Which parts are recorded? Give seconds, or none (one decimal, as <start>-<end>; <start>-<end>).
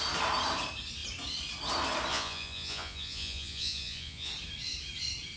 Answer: 0.0-2.1; 4.3-5.4